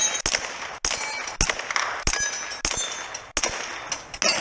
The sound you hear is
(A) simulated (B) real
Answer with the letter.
B